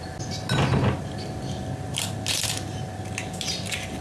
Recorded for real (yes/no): yes